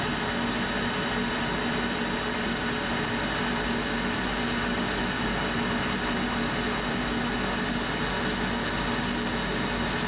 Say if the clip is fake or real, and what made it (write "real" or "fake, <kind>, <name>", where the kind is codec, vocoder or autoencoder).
real